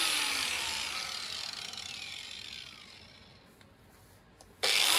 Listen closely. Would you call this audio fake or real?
real